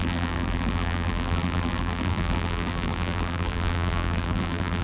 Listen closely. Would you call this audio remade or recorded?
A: remade